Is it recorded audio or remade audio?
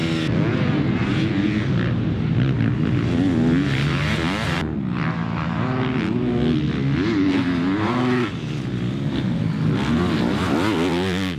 recorded